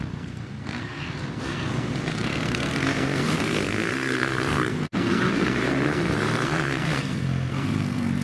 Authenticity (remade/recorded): remade